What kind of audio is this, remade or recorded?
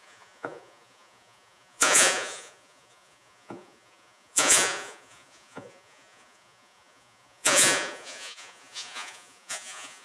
remade